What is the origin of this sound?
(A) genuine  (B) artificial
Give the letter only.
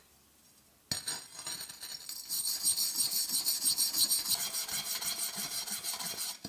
A